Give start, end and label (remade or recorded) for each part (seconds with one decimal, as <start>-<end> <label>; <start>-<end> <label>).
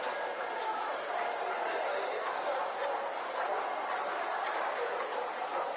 0.0-0.6 recorded; 0.6-1.1 remade; 1.1-5.8 recorded